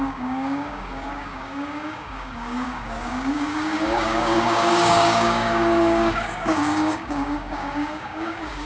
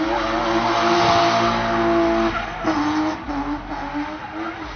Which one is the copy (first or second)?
first